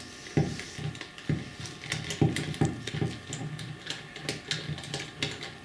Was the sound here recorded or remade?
recorded